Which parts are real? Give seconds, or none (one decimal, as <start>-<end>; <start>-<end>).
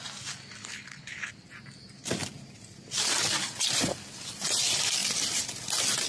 0.0-0.6; 1.3-6.1